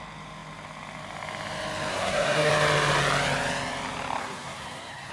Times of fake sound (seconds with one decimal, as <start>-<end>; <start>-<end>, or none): 1.9-2.5; 4.2-5.1